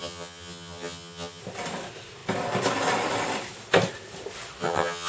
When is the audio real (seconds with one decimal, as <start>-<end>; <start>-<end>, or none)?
1.4-4.6